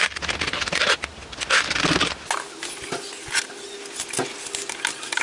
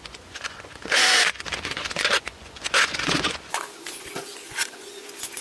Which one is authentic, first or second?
first